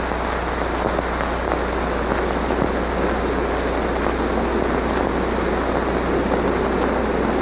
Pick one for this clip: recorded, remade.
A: recorded